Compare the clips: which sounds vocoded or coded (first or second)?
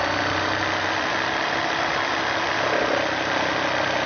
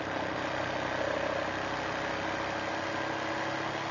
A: first